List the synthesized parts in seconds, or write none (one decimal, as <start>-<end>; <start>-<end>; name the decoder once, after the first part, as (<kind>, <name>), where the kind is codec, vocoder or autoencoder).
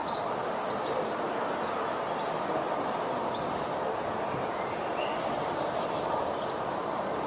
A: none